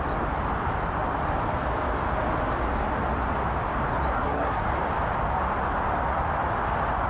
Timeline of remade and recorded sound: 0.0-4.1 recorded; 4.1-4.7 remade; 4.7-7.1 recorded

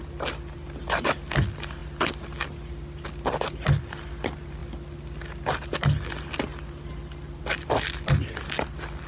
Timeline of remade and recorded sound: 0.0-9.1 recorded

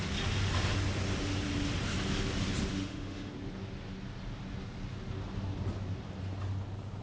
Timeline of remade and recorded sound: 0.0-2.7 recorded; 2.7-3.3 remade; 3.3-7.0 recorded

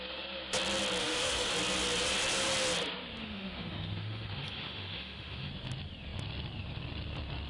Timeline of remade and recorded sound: 0.0-1.0 recorded; 1.0-1.5 remade; 1.5-3.2 recorded; 3.2-5.5 remade; 5.5-7.5 recorded